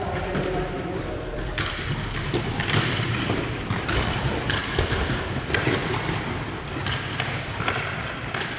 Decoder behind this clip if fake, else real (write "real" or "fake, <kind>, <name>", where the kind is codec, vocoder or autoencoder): fake, vocoder, BigVGAN v2